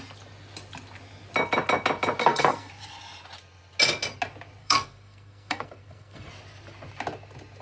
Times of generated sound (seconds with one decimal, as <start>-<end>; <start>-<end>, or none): 2.2-2.7; 4.6-6.3